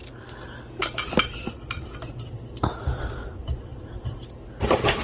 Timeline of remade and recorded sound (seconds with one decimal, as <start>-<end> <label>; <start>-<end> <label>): 0.0-3.7 recorded; 3.7-5.0 remade